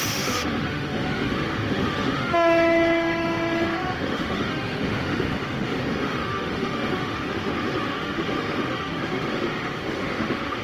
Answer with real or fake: fake